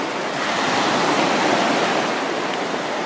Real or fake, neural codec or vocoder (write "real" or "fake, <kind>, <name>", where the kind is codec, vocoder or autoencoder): real